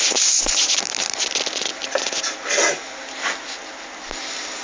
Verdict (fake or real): real